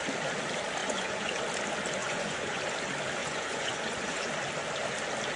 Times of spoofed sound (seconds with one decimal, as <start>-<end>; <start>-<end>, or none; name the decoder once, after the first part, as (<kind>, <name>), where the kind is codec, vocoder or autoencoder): 0.8-1.4 (vocoder, Vocos); 2.0-2.6; 3.2-4.3